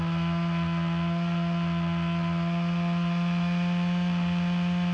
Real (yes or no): yes